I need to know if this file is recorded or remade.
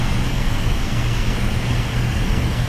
remade